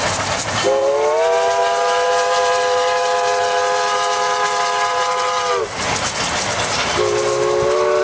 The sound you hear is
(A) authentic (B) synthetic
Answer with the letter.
A